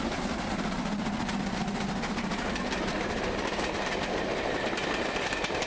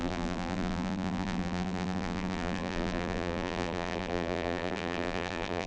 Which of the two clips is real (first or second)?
first